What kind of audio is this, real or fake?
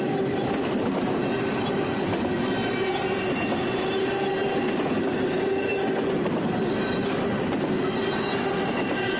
real